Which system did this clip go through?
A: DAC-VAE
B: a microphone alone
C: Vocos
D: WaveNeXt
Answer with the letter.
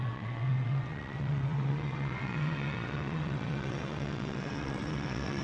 D